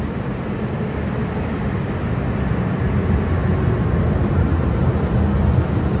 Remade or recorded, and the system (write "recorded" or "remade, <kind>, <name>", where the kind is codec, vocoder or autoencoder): recorded